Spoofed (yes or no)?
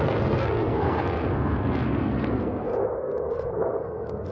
yes